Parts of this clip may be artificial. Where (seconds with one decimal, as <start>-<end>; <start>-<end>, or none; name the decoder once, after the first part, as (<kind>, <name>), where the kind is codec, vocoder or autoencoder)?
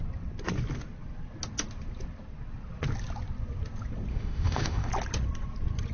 4.1-4.9 (autoencoder, DAC-VAE)